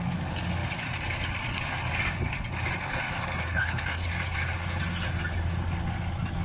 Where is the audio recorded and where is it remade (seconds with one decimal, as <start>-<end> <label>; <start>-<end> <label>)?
0.0-3.5 recorded; 3.5-4.1 remade; 4.1-6.4 recorded